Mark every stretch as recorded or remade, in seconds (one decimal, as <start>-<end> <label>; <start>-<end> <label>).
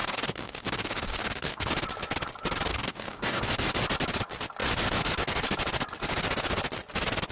0.0-1.7 remade; 1.7-2.7 recorded; 2.7-3.5 remade; 3.5-7.3 recorded